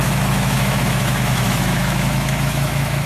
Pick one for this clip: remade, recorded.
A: remade